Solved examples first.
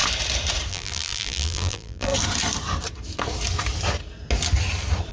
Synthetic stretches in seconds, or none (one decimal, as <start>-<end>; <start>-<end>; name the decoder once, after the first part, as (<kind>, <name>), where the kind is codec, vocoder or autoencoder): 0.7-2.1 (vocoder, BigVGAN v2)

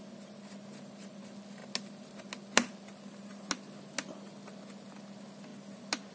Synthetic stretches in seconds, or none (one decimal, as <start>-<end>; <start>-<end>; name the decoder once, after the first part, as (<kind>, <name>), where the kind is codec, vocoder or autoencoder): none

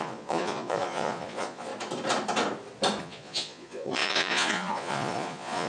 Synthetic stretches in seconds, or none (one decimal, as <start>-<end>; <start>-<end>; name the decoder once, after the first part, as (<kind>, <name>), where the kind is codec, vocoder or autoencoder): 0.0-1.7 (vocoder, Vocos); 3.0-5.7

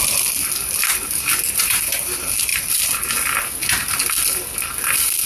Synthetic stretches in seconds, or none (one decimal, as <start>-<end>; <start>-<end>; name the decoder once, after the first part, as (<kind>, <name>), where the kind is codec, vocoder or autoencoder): none

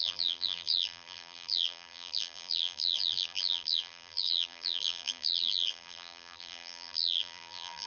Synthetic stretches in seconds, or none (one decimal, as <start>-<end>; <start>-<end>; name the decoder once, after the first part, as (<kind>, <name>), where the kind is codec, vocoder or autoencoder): 0.0-7.9 (vocoder, BigVGAN v2)

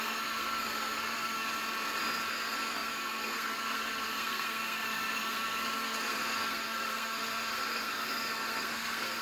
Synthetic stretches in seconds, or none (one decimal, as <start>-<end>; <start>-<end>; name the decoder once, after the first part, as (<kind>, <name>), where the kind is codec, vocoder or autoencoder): 0.0-1.6 (codec, SNAC); 2.3-9.2